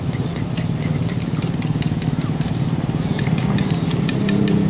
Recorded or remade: recorded